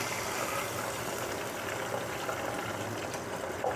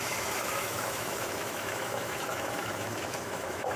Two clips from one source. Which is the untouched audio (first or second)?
first